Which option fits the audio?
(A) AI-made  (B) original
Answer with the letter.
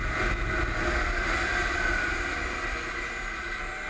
B